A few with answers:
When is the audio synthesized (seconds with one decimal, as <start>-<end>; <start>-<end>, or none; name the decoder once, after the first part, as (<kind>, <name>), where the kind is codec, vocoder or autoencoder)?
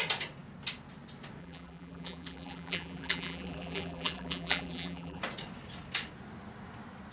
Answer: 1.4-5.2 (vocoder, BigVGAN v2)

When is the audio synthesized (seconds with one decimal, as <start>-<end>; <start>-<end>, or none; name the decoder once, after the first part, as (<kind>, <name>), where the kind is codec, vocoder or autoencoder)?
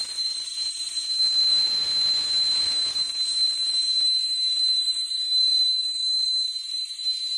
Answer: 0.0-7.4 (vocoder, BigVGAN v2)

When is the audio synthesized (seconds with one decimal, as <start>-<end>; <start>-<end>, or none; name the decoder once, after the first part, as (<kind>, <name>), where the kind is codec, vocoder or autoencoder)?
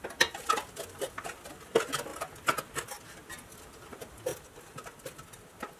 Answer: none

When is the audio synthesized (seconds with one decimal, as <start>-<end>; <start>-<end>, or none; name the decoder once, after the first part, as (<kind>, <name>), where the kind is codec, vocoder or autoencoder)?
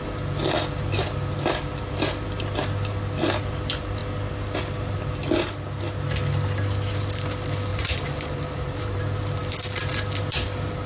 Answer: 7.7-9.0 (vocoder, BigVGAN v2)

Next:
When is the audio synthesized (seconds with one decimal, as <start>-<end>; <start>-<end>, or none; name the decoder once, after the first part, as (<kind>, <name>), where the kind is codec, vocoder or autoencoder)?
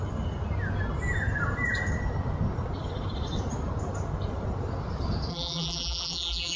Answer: 5.3-6.6 (vocoder, BigVGAN v2)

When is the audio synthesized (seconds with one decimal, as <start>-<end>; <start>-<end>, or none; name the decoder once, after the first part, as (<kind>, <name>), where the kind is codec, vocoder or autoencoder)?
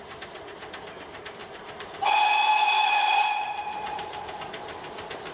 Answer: 1.4-4.4 (vocoder, BigVGAN v2)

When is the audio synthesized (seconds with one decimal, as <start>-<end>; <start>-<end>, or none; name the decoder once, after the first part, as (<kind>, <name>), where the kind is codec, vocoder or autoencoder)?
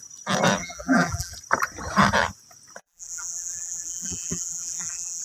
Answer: 0.6-1.3 (vocoder, BigVGAN v2); 2.8-5.2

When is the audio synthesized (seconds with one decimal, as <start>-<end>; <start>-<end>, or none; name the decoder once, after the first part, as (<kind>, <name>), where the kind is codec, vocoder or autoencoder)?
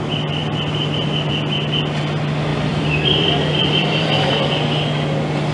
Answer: 2.5-4.5 (vocoder, BigVGAN v2)